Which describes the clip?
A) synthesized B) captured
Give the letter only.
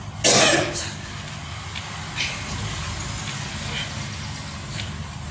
B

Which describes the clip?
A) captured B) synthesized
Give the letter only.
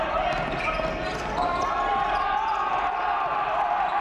A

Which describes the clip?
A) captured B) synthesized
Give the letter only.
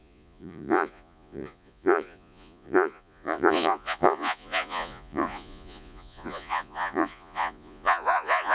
B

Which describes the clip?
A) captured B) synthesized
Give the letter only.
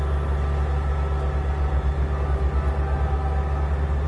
A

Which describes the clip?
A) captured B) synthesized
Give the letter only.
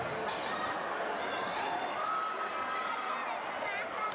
A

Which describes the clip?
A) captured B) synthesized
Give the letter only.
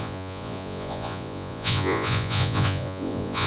B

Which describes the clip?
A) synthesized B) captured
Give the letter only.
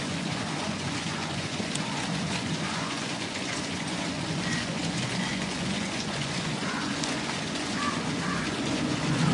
A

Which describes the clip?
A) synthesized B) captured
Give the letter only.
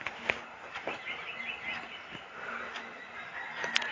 B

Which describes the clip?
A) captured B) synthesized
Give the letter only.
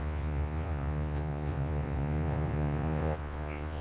B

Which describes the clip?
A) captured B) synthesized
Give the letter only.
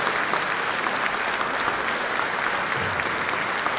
A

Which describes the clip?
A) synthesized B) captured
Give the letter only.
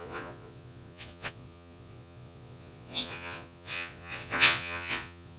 A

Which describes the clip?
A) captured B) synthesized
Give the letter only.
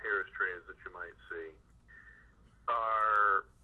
A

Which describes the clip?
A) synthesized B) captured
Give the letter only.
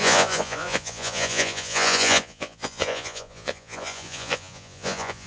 A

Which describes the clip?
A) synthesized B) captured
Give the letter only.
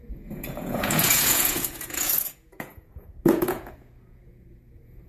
A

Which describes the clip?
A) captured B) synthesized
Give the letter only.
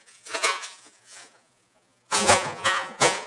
B